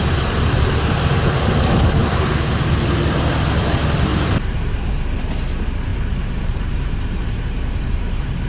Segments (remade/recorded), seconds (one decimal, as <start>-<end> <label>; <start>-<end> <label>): 0.0-2.0 recorded; 2.0-2.5 remade; 2.5-4.1 recorded; 4.1-4.9 remade; 4.9-5.9 recorded; 5.9-8.5 remade